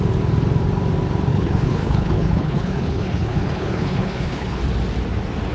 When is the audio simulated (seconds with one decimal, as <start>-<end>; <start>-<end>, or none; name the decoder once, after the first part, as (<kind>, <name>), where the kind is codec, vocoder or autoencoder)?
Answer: 1.3-4.6 (codec, HILCodec)